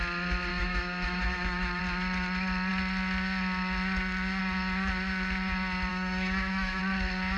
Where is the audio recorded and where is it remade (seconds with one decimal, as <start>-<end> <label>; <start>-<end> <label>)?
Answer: 0.0-0.5 recorded; 0.5-1.8 remade; 1.8-5.9 recorded; 5.9-6.8 remade; 6.8-7.4 recorded